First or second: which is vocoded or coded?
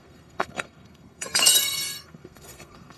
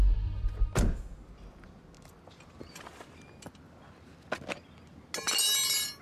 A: first